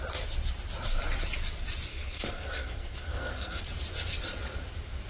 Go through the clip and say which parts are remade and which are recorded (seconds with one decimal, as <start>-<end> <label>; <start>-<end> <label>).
0.0-1.9 recorded; 1.9-3.6 remade; 3.6-5.1 recorded